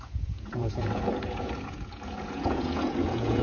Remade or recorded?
remade